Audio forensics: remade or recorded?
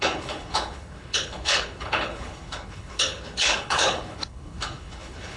remade